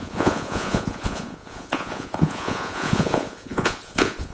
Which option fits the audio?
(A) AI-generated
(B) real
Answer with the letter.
A